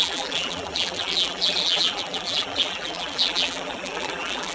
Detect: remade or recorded remade